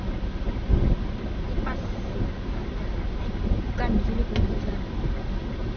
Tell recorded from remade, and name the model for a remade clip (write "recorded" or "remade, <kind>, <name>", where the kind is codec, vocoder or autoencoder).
recorded